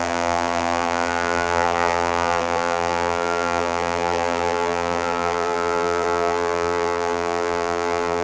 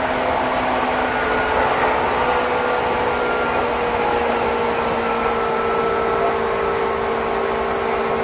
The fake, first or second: first